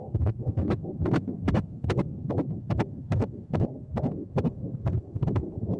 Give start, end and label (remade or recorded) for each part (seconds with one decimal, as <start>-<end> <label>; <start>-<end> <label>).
0.0-5.8 remade